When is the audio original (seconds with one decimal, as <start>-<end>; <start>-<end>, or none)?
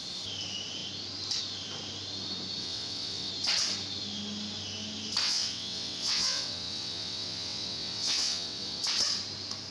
0.0-2.6; 3.3-5.2; 8.8-9.7